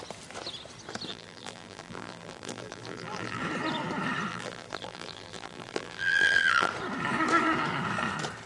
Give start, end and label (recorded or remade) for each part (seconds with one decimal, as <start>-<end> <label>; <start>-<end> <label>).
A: 0.0-1.1 recorded; 1.1-3.4 remade; 3.4-4.3 recorded; 4.3-6.7 remade; 6.7-8.5 recorded